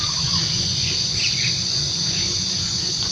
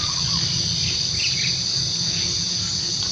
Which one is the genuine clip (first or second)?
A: second